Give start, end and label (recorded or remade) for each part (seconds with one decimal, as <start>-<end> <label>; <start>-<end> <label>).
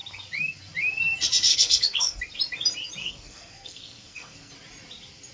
0.0-1.5 recorded; 1.5-2.2 remade; 2.2-3.0 recorded; 3.0-4.5 remade; 4.5-5.3 recorded